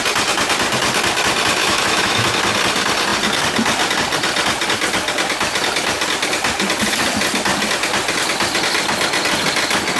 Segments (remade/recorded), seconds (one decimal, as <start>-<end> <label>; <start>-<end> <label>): 0.0-1.6 recorded; 1.6-2.3 remade; 2.3-10.0 recorded